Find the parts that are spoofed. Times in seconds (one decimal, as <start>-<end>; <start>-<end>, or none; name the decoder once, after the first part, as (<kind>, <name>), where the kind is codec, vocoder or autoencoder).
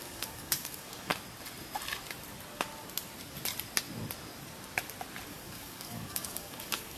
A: 0.0-1.1 (codec, DAC); 5.3-7.0